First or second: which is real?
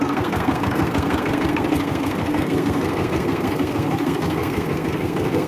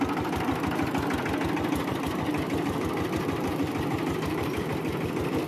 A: second